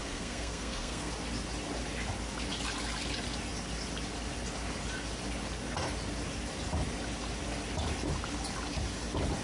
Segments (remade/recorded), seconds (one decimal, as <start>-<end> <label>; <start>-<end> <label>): 0.0-1.1 remade; 1.1-9.4 recorded